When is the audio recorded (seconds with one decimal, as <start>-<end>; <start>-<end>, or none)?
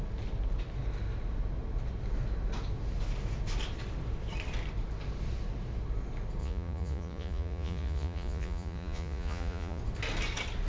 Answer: 0.0-6.4; 9.8-10.7